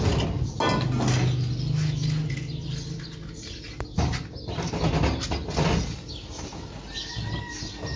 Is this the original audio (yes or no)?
yes